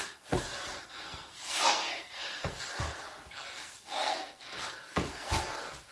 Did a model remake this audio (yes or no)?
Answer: yes